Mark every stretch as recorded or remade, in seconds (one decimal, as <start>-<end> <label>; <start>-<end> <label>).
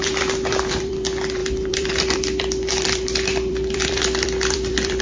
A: 0.0-5.0 remade